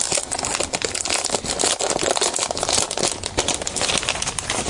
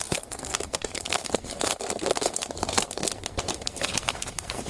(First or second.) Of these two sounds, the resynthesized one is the second